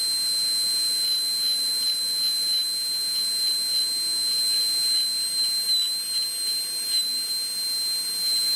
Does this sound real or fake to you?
real